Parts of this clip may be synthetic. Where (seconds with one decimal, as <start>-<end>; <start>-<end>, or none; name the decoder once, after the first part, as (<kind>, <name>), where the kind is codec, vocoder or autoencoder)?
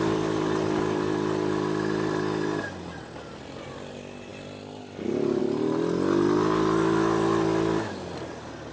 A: none